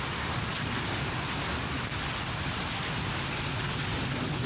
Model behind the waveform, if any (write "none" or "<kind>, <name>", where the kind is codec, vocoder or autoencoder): none